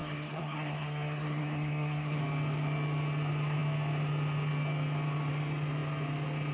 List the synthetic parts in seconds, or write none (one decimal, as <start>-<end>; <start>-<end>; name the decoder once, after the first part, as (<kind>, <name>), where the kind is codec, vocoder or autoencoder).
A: 0.0-2.2 (codec, SNAC)